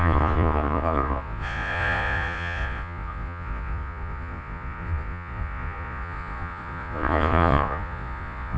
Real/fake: fake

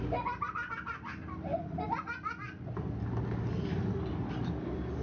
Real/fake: real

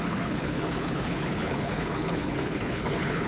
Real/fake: fake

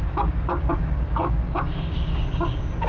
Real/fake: fake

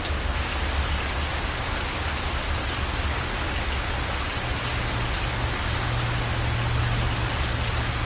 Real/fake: real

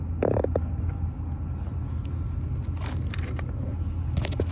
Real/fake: real